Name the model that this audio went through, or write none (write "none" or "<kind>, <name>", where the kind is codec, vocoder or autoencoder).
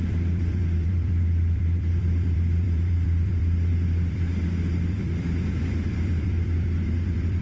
vocoder, BigVGAN v2